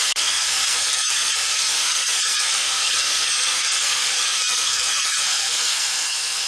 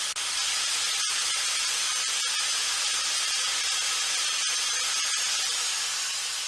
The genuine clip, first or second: second